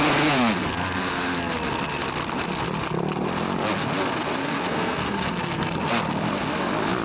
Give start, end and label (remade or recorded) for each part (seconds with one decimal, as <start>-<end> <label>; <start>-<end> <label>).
0.0-4.4 recorded; 4.4-5.9 remade; 5.9-7.0 recorded